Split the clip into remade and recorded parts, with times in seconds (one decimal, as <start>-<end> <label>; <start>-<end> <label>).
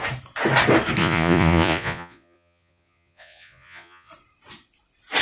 0.0-1.0 recorded; 1.0-4.1 remade; 4.1-5.2 recorded